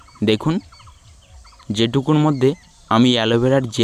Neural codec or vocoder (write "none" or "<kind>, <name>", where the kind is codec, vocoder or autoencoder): none